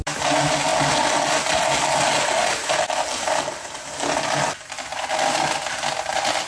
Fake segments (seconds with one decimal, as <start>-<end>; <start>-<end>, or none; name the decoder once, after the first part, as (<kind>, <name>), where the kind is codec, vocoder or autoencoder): none